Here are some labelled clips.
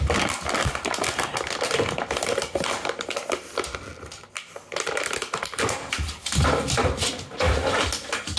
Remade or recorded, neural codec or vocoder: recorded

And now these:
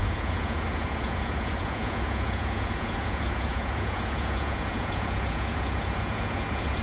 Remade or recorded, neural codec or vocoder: remade, vocoder, Vocos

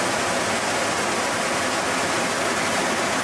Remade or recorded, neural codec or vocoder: recorded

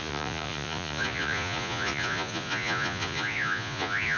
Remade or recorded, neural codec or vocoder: remade, vocoder, Vocos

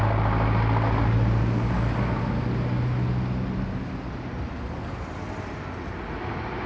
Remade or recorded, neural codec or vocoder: recorded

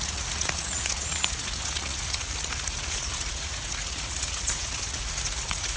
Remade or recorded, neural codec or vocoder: remade, vocoder, Vocos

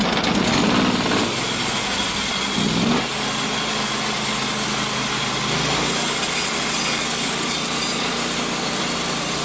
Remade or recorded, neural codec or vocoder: recorded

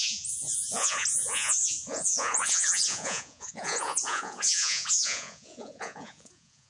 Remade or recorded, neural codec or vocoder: remade, vocoder, Vocos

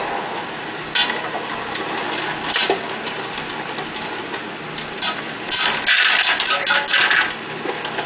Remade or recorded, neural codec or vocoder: recorded